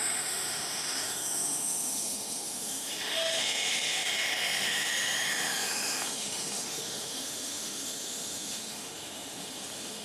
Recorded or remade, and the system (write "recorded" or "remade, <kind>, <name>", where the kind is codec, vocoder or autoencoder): remade, autoencoder, DAC-VAE